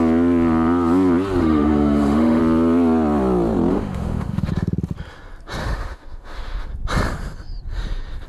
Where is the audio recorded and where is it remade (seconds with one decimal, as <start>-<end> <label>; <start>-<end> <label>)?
0.0-1.4 recorded; 1.4-2.4 remade; 2.4-3.7 recorded; 3.7-4.5 remade; 4.5-5.6 recorded; 5.6-6.7 remade; 6.7-8.3 recorded